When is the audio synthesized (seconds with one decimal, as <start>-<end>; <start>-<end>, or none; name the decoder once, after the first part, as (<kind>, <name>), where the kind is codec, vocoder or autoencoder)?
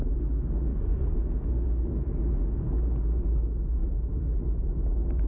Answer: 0.7-1.2 (vocoder, Vocos)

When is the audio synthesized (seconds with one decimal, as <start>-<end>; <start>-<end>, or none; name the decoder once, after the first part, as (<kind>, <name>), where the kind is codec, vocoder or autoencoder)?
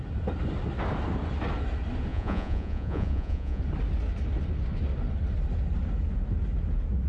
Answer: 2.1-3.6 (vocoder, Vocos)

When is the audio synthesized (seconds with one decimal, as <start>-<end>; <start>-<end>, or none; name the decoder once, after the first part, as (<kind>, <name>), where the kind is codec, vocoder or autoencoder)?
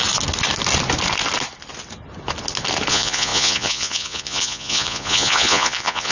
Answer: 2.9-6.1 (vocoder, Vocos)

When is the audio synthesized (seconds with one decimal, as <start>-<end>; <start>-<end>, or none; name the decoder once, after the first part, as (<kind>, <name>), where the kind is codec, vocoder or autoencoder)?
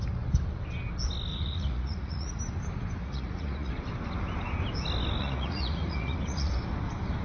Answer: 1.3-2.4 (vocoder, Vocos); 3.0-3.7; 5.2-6.5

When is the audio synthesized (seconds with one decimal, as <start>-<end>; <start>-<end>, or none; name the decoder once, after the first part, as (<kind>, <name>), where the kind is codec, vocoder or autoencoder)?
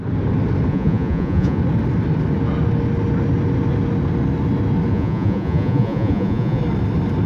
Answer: 0.7-1.6 (vocoder, Vocos); 4.9-6.6